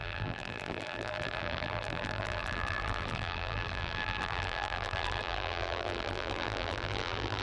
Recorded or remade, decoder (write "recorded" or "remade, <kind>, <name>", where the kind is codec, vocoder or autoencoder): remade, vocoder, BigVGAN v2